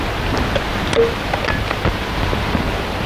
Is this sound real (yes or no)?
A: yes